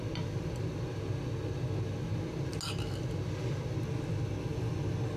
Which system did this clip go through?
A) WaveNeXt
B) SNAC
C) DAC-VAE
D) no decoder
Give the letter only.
D